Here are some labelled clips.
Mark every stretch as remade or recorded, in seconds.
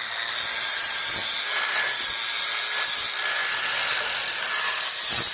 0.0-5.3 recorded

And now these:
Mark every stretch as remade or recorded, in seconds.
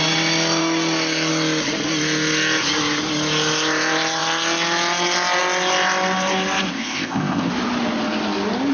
0.0-6.7 recorded; 6.7-7.5 remade; 7.5-8.7 recorded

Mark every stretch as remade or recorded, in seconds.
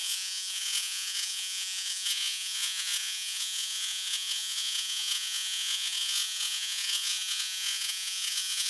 0.0-8.7 remade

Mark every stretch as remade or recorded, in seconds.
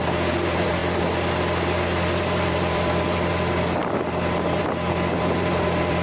0.0-0.8 remade; 0.8-2.2 recorded; 2.2-3.3 remade; 3.3-4.6 recorded; 4.6-6.0 remade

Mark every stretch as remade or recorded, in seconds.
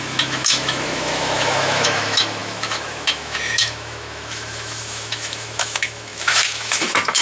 0.0-7.2 remade